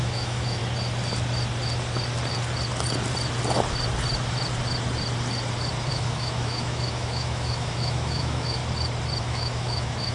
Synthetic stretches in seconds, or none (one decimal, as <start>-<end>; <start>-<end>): 0.0-0.6; 5.9-8.6; 9.2-10.1